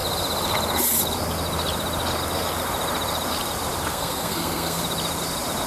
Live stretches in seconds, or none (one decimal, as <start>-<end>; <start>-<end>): 0.0-3.9; 4.8-5.7